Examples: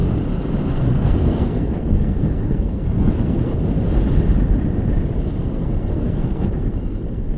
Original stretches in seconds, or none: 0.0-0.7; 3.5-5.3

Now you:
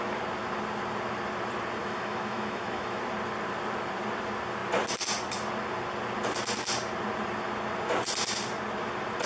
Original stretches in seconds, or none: 0.0-1.8; 3.0-9.3

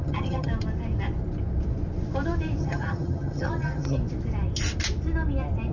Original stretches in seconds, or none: 0.5-2.6; 4.0-5.7

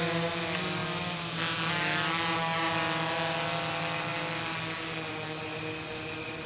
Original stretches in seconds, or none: 0.0-6.5